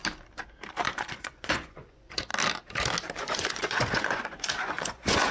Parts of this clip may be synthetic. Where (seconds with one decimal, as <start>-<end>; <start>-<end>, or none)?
0.7-2.3; 3.2-5.3